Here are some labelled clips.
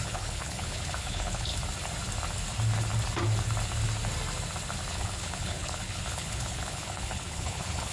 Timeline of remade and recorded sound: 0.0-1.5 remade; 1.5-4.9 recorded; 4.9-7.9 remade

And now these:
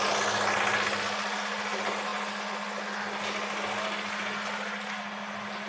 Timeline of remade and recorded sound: 0.0-5.7 recorded

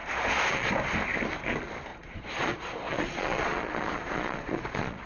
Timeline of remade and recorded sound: 0.0-0.7 remade; 0.7-1.9 recorded; 1.9-5.1 remade